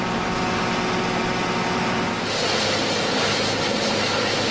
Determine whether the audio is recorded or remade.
recorded